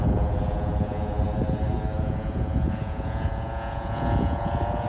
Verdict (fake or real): fake